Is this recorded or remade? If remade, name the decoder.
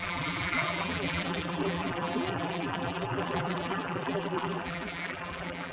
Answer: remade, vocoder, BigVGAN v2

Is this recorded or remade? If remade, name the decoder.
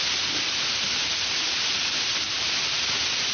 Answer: recorded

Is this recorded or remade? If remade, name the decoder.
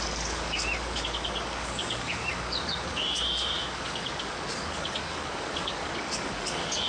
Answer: remade, codec, DAC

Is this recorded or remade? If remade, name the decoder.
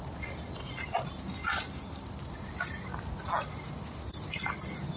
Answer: recorded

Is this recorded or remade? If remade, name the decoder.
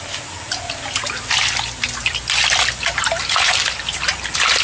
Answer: recorded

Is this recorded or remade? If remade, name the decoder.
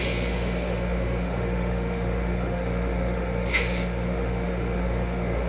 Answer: remade, autoencoder, DAC-VAE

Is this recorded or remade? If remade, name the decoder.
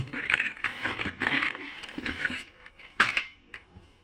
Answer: remade, codec, DAC